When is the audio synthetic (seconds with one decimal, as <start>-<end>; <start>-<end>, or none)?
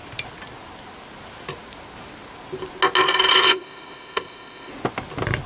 3.3-4.7